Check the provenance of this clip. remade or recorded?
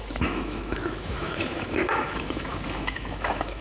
remade